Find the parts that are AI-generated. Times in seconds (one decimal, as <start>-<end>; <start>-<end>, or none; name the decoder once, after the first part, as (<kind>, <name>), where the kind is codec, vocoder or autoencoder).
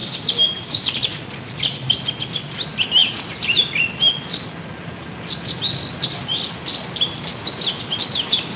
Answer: none